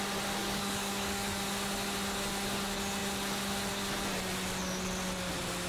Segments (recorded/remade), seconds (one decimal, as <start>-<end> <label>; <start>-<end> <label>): 0.0-0.4 recorded; 0.4-1.4 remade; 1.4-5.7 recorded